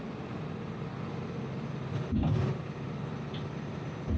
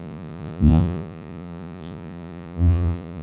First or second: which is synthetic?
second